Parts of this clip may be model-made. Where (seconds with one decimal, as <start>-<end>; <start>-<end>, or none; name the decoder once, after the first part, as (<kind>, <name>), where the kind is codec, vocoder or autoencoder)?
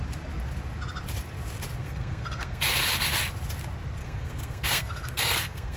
1.8-2.6 (codec, SNAC); 4.0-5.8